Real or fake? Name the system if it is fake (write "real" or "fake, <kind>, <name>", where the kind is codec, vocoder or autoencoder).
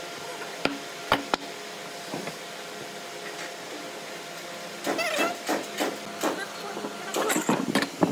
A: real